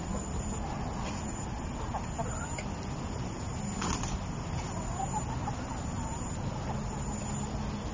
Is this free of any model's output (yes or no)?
yes